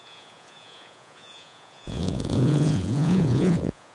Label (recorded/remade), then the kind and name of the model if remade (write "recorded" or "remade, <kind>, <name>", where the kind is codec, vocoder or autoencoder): remade, vocoder, Vocos